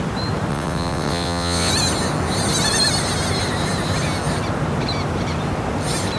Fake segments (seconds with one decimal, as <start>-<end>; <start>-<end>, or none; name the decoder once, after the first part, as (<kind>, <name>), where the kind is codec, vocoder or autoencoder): 0.5-1.7 (vocoder, WaveNeXt)